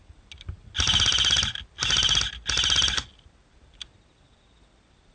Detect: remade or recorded recorded